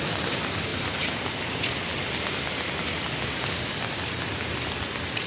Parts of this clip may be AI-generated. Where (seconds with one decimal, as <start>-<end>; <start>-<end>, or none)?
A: none